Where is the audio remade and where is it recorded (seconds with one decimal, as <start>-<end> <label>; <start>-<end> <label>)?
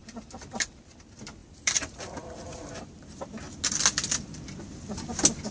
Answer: 0.0-1.4 recorded; 1.4-3.2 remade; 3.2-5.5 recorded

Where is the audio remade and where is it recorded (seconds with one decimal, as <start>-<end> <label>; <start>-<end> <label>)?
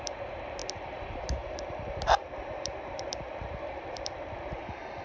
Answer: 0.0-5.0 remade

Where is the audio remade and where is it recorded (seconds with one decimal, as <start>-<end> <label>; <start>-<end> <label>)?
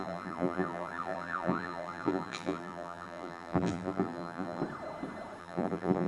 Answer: 0.0-4.6 remade; 4.6-5.4 recorded; 5.4-6.1 remade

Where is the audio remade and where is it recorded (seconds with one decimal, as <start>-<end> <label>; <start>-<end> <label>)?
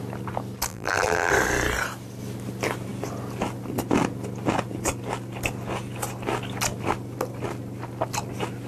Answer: 0.0-0.7 recorded; 0.7-1.3 remade; 1.3-8.7 recorded